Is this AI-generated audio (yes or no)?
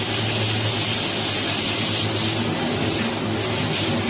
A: no